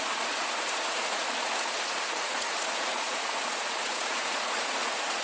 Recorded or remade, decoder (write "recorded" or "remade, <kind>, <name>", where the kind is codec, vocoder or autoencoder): remade, vocoder, Vocos